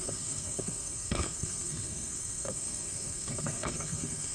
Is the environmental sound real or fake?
fake